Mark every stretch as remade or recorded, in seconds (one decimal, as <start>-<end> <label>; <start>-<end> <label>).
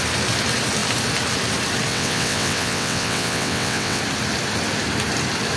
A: 0.0-1.9 recorded; 1.9-4.0 remade; 4.0-5.6 recorded